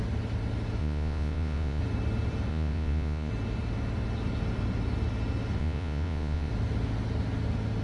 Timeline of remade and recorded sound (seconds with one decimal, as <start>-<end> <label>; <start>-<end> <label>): 0.0-0.8 recorded; 0.8-1.8 remade; 1.8-2.5 recorded; 2.5-3.3 remade; 3.3-5.6 recorded; 5.6-6.5 remade; 6.5-7.8 recorded